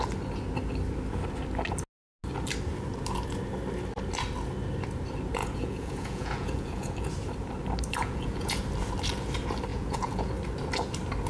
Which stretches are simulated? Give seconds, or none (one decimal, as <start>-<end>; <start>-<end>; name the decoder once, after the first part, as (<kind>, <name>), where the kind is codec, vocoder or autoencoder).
5.4-7.1 (vocoder, Vocos); 8.0-8.6; 9.7-10.3